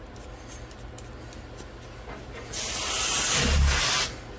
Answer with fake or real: real